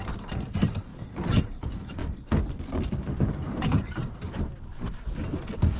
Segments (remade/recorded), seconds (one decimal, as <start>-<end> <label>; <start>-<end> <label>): 0.0-0.9 remade; 0.9-1.4 recorded; 1.4-2.0 remade; 2.0-5.8 recorded